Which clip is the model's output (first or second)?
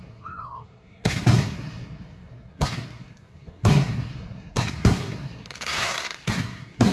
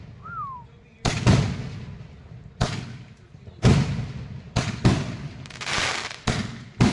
first